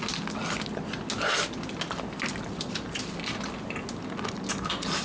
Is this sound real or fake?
real